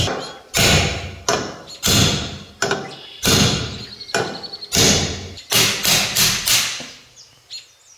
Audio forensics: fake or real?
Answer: real